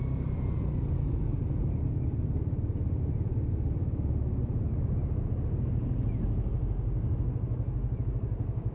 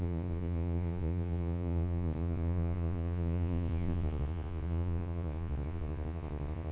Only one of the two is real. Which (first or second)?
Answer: first